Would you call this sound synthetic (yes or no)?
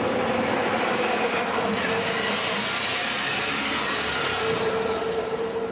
no